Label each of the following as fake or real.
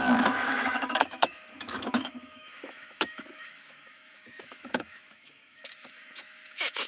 fake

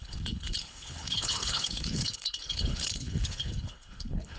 fake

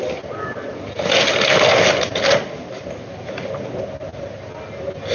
real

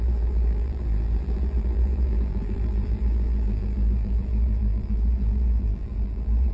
fake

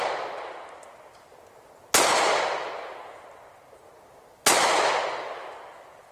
real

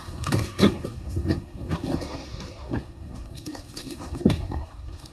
fake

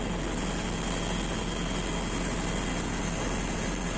real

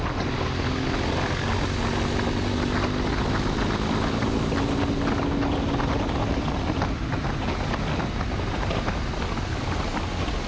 real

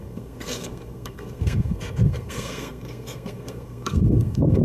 fake